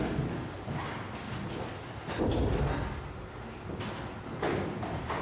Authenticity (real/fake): real